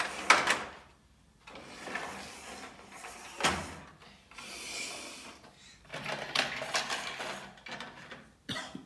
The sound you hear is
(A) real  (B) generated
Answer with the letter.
A